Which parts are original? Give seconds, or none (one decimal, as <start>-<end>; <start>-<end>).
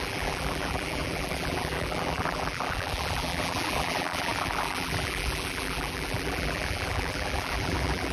none